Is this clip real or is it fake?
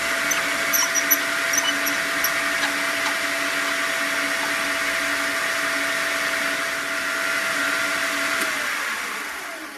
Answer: real